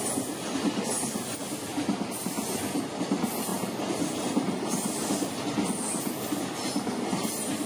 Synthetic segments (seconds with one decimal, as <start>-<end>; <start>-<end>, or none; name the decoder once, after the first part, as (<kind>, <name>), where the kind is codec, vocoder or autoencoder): none